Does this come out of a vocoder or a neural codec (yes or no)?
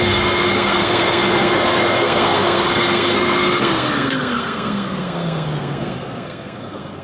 yes